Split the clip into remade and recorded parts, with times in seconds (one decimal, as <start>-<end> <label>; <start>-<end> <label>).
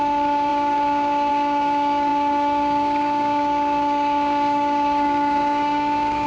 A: 0.0-6.3 remade